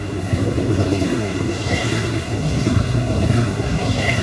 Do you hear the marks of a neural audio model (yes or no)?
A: yes